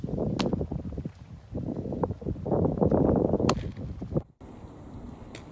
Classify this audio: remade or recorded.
recorded